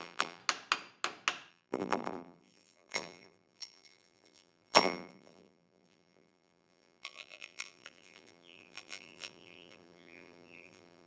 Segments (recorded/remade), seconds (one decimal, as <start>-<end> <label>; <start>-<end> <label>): 0.0-0.4 remade; 0.4-1.5 recorded; 1.5-11.1 remade